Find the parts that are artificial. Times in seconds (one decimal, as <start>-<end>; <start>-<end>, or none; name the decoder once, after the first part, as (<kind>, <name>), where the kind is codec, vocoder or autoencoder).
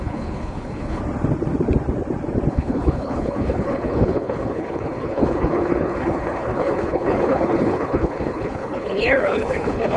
0.0-1.0 (codec, HILCodec); 2.5-10.0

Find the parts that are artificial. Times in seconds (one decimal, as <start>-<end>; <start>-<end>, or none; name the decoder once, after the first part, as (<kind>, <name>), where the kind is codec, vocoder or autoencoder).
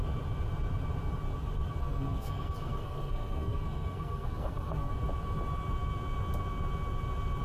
1.8-4.9 (codec, SNAC)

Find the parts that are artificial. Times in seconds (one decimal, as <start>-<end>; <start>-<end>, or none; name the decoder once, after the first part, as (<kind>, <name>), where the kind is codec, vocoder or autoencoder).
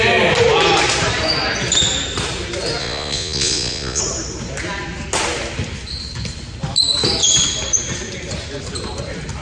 2.8-4.0 (vocoder, Vocos)